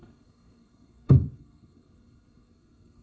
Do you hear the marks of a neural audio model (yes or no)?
yes